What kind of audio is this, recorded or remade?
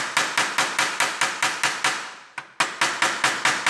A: recorded